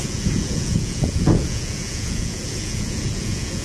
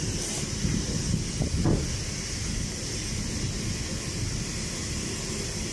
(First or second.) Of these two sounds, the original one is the second